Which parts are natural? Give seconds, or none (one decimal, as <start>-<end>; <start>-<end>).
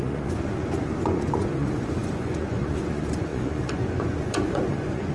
none